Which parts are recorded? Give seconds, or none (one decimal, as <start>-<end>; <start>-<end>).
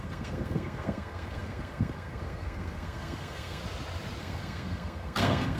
3.6-4.2